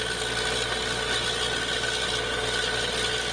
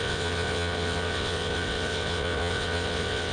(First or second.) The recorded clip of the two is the first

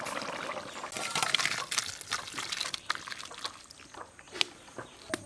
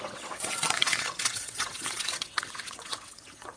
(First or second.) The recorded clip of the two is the first